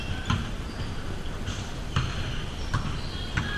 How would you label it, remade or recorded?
recorded